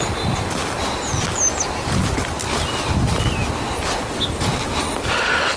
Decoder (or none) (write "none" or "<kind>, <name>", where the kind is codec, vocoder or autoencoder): none